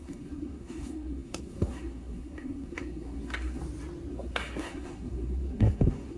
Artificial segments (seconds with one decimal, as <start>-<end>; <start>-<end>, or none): 0.0-3.6; 4.1-6.2